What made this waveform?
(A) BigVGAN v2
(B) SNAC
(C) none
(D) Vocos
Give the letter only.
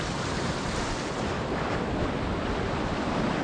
C